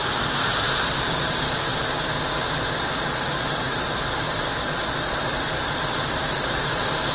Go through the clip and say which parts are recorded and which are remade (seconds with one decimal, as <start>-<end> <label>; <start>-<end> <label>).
0.0-1.7 remade; 1.7-5.4 recorded; 5.4-7.1 remade